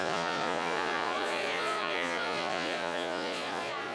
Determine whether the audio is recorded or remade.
remade